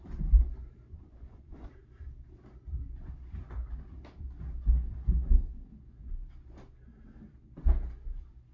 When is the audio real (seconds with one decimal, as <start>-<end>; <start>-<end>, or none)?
0.0-0.9; 1.7-8.5